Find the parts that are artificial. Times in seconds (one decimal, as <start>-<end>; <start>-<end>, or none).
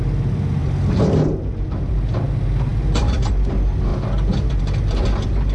2.7-3.3; 3.9-4.6